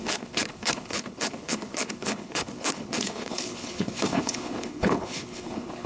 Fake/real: fake